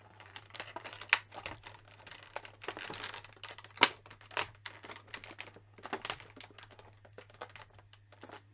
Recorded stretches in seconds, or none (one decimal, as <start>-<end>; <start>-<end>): 0.9-8.5